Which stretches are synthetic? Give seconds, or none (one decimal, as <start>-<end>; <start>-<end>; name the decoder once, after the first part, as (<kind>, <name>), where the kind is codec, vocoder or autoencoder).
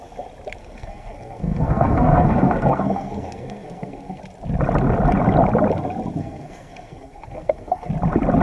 0.6-4.2 (codec, SNAC); 6.2-7.9